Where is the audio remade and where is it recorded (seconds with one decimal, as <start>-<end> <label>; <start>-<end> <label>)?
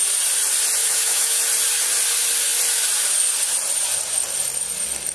0.0-0.8 recorded; 0.8-1.4 remade; 1.4-5.1 recorded